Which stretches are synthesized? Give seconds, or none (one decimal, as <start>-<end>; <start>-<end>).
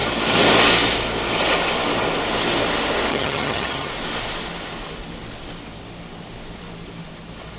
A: 3.1-3.9